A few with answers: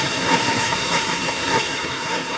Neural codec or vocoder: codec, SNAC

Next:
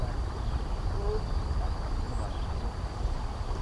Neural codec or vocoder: none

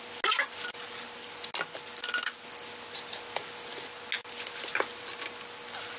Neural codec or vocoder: none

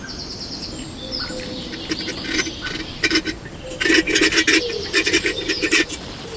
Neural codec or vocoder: none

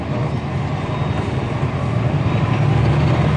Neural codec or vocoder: none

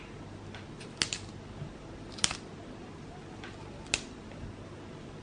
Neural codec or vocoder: none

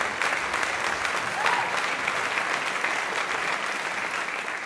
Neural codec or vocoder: none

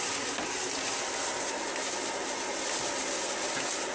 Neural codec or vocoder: none